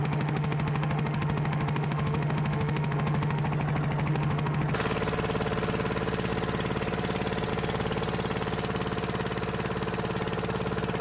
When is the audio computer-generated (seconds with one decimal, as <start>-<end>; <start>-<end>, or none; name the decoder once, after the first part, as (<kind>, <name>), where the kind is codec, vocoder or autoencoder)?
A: 0.0-3.4 (autoencoder, DAC-VAE); 4.1-4.6